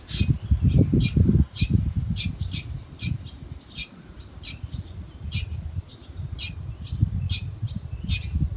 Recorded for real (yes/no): yes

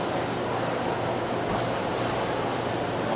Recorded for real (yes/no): yes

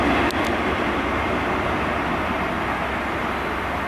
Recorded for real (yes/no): yes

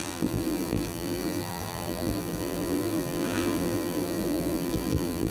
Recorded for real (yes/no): no